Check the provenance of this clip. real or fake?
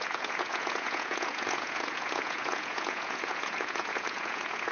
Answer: fake